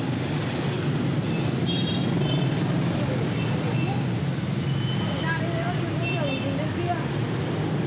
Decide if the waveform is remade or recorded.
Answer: recorded